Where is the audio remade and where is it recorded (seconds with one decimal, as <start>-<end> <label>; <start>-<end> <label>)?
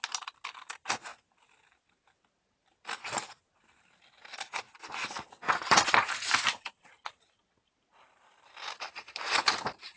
0.0-10.0 recorded